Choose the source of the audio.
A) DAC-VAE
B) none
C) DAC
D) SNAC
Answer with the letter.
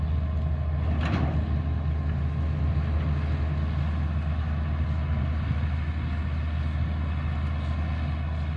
B